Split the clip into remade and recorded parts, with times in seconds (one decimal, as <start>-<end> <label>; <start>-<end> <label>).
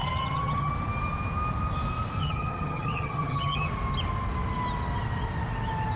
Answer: 0.0-0.7 remade; 0.7-2.2 recorded; 2.2-3.7 remade; 3.7-6.0 recorded